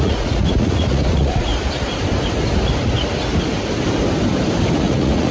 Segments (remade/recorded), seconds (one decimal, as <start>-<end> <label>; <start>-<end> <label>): 0.0-1.5 remade; 1.5-4.7 recorded; 4.7-5.3 remade